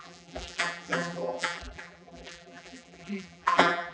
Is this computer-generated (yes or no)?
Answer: yes